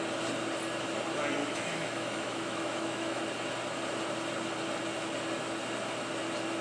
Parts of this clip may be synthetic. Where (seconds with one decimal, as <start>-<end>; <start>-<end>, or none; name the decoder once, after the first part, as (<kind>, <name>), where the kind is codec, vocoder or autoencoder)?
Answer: 1.4-3.2 (autoencoder, DAC-VAE)